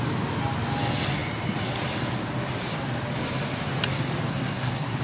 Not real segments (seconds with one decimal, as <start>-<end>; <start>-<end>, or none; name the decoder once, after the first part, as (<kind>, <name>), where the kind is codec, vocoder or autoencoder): 4.3-5.0 (codec, SNAC)